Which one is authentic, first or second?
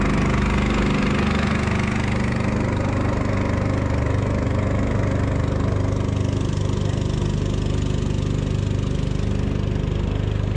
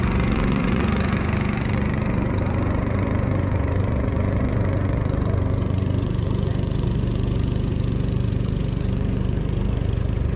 first